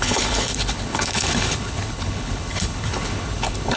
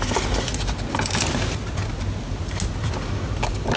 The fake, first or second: first